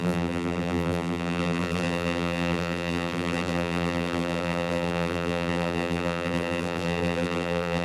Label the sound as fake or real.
fake